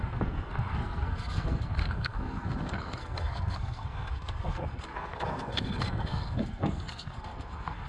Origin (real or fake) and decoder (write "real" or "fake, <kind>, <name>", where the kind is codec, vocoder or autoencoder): fake, codec, SNAC